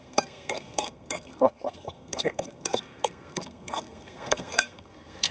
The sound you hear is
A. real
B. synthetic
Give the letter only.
B